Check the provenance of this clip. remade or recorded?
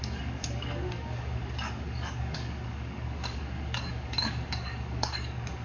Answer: remade